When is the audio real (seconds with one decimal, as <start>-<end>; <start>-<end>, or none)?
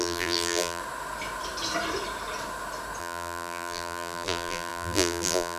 0.8-3.0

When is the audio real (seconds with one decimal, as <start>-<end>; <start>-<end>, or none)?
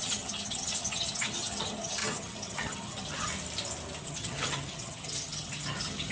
3.3-4.0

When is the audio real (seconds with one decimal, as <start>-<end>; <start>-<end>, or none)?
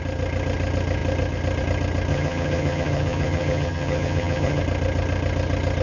0.0-2.1; 4.6-5.8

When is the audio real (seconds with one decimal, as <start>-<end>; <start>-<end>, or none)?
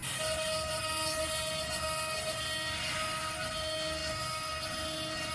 0.0-5.3